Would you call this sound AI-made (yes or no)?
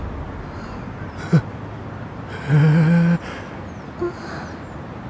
no